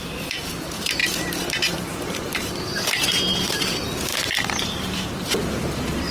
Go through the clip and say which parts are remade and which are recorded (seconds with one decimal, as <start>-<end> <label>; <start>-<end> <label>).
0.0-1.0 recorded; 1.0-3.6 remade; 3.6-4.1 recorded; 4.1-6.1 remade